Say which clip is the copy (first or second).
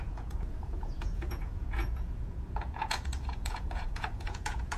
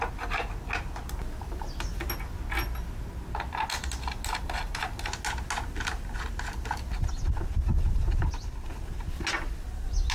first